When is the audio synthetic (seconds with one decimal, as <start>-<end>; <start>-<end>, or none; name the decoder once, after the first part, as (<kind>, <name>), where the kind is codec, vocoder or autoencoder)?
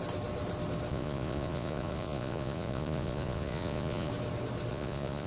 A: 0.9-4.1 (vocoder, Vocos); 4.7-5.3